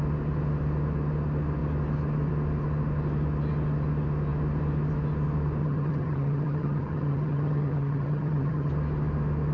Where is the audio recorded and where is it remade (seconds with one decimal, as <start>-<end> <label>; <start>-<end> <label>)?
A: 0.0-5.6 recorded; 5.6-8.7 remade; 8.7-9.5 recorded